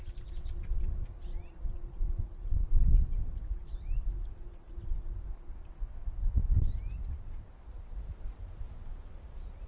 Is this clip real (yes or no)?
yes